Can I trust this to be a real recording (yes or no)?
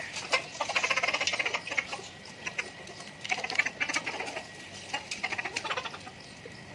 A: yes